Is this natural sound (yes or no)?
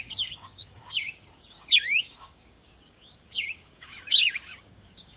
no